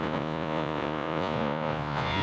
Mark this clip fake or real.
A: fake